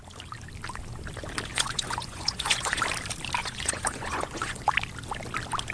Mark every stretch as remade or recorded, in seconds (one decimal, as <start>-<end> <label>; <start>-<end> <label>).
0.0-1.5 recorded; 1.5-2.8 remade; 2.8-3.4 recorded; 3.4-4.7 remade; 4.7-5.7 recorded